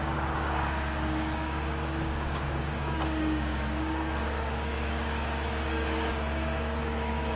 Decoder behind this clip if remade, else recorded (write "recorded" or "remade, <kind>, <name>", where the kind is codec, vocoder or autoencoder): remade, codec, DAC